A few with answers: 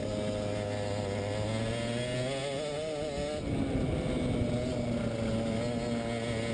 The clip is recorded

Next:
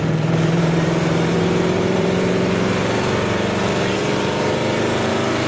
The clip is remade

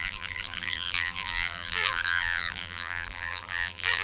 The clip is remade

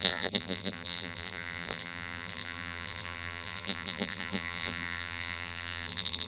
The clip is remade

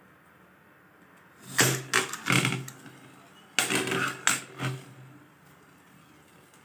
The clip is recorded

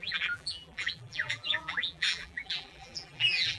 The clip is remade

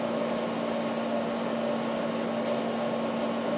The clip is recorded